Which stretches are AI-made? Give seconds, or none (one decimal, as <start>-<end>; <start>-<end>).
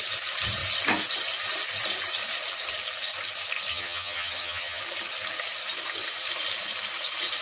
3.7-4.8